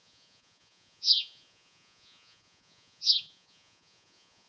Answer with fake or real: fake